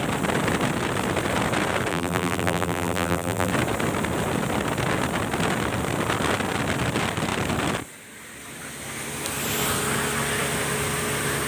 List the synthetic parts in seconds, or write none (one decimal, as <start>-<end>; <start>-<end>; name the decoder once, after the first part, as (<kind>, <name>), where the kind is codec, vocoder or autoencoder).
1.9-3.5 (vocoder, BigVGAN v2)